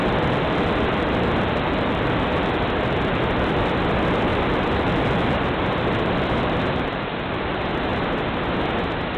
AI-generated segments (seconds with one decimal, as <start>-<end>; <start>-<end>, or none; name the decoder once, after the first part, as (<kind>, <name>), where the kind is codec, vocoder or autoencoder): 0.0-7.9 (vocoder, BigVGAN v2)